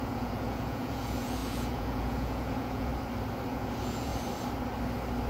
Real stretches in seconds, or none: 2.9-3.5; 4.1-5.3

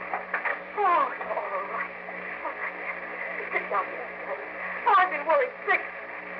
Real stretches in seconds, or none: 0.0-0.5; 1.3-6.4